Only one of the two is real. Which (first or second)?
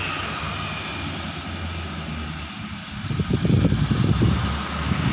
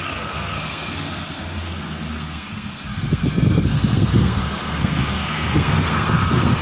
first